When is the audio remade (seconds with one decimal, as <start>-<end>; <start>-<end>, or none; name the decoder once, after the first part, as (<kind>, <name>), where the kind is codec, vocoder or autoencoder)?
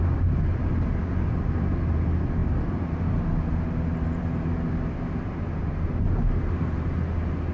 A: none